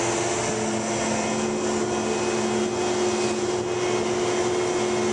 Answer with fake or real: real